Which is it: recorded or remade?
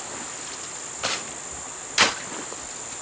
recorded